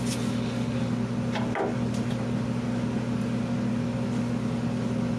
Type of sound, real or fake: real